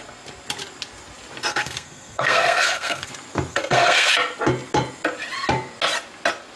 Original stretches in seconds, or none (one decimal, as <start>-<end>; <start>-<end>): 0.0-1.5; 3.1-3.5; 4.1-6.6